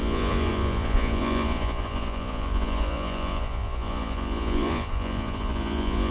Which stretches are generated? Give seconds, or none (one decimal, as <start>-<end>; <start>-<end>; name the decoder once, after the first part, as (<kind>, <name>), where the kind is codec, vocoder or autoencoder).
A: 0.0-6.1 (vocoder, Vocos)